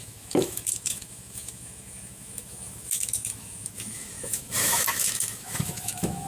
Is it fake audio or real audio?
fake